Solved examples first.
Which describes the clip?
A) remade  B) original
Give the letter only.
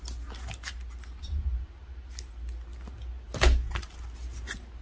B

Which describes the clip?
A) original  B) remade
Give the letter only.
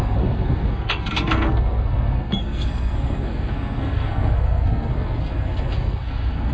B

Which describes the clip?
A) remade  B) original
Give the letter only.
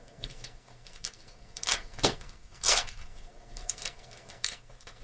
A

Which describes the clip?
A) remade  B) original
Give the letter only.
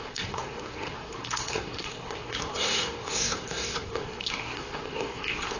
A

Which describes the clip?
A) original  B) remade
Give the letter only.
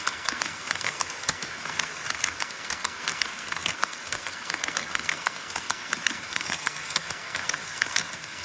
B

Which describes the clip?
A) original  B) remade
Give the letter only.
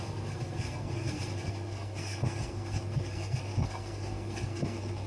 B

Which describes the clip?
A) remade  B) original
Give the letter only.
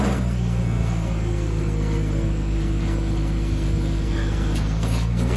A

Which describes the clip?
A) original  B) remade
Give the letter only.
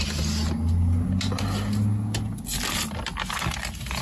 A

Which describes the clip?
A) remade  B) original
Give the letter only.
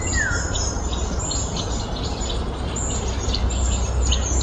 B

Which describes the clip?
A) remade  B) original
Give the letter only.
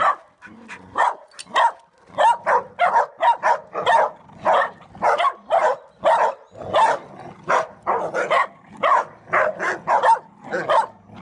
B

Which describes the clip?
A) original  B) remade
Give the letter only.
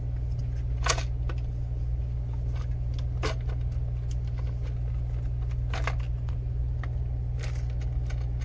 A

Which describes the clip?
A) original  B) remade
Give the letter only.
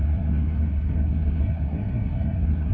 B